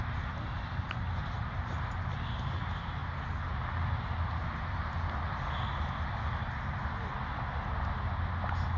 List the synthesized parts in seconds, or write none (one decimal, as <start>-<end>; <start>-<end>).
none